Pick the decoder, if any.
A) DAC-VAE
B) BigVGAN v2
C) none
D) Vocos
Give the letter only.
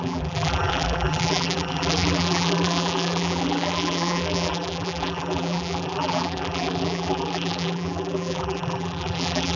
B